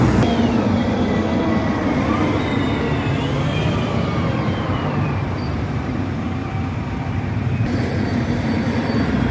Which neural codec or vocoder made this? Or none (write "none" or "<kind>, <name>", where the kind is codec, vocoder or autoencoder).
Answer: vocoder, BigVGAN v2